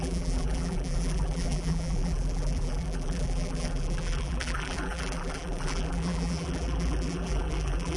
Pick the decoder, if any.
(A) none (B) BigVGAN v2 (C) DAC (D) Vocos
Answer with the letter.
B